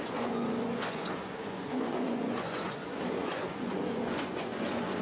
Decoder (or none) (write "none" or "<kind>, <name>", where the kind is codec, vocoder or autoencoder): vocoder, Vocos